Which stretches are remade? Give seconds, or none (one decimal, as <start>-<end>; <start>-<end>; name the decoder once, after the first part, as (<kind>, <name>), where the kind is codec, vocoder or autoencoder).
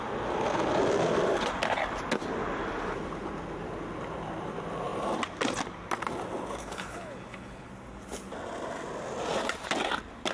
6.6-7.7 (codec, HILCodec)